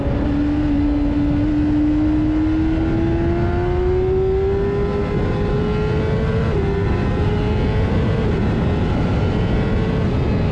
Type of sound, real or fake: real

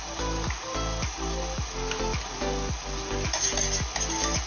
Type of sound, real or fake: real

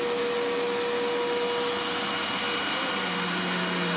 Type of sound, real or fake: real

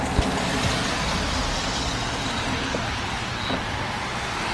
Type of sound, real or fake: real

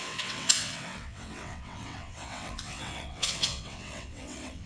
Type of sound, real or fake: fake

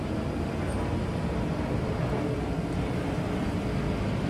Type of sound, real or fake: real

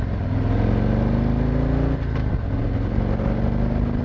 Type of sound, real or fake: real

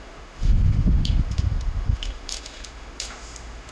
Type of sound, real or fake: fake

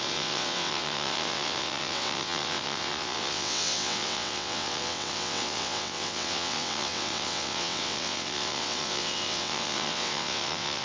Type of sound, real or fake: fake